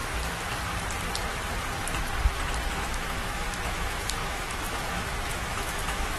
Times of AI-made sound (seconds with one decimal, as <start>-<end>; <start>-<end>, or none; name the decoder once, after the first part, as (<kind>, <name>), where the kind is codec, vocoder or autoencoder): 2.8-6.2 (autoencoder, DAC-VAE)